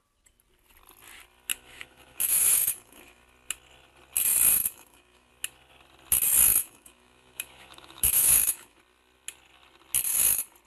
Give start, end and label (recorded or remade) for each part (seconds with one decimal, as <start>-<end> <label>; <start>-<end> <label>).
0.0-1.5 recorded; 1.5-3.2 remade; 3.2-4.5 recorded; 4.5-5.3 remade; 5.3-6.6 recorded; 6.6-8.8 remade; 8.8-10.7 recorded

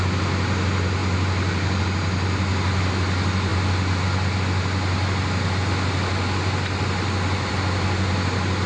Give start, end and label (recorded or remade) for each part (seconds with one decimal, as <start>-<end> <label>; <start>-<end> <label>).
0.0-8.7 recorded

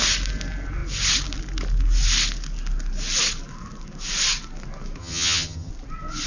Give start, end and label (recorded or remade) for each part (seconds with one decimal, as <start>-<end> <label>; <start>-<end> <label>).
0.0-5.0 recorded; 5.0-5.7 remade; 5.7-6.3 recorded

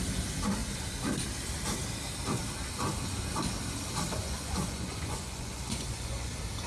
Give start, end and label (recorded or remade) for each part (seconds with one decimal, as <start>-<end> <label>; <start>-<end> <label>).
0.0-4.2 recorded; 4.2-6.3 remade; 6.3-6.7 recorded